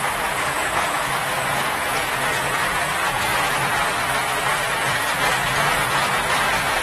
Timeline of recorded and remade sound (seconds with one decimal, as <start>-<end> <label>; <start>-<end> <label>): 0.0-3.3 remade; 3.3-4.5 recorded; 4.5-6.8 remade